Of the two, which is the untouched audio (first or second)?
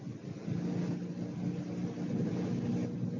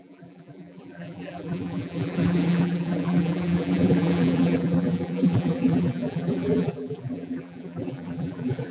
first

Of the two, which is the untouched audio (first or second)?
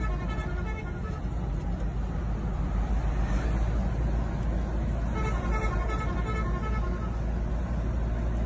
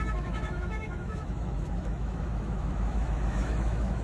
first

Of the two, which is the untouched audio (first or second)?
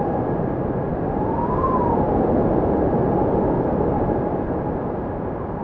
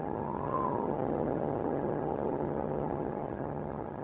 first